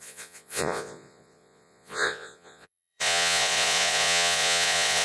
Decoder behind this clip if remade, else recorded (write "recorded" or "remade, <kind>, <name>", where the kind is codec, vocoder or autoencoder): remade, vocoder, Vocos